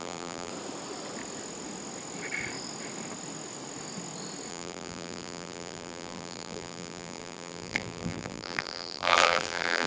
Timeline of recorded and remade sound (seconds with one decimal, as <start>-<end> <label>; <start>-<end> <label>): 0.0-0.5 remade; 0.5-4.5 recorded; 4.5-9.9 remade